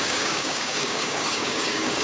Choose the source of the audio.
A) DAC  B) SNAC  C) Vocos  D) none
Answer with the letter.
A